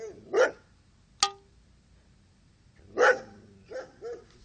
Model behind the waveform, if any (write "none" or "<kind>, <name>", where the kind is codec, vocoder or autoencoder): none